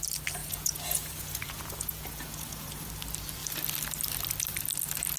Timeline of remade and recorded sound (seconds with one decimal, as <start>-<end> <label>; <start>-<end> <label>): 0.0-0.4 recorded; 0.4-2.9 remade; 2.9-5.2 recorded